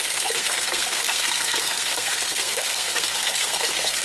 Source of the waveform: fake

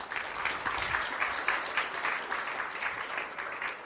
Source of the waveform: real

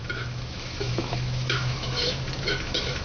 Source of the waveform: fake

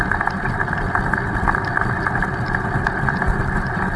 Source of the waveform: real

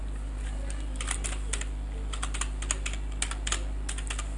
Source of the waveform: real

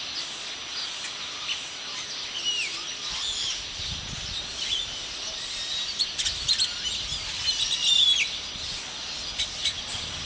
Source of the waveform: real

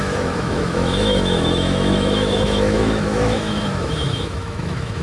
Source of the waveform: fake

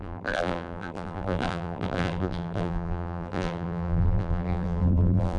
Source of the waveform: fake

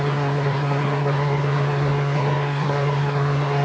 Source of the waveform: fake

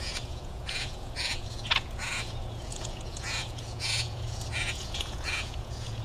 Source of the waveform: fake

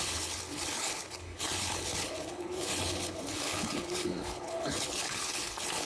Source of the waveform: fake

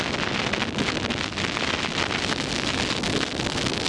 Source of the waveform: real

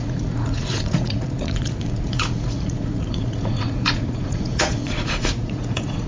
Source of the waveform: fake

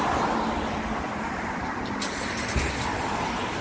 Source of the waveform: real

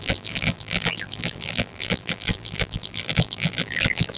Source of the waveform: fake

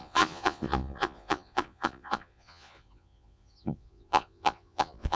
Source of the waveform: fake